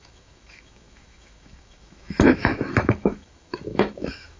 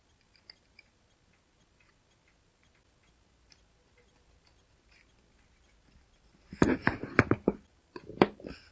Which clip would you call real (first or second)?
second